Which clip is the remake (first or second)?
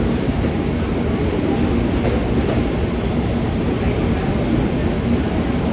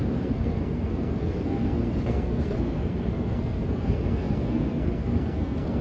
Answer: second